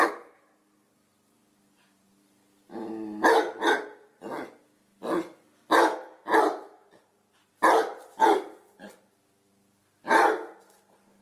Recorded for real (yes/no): yes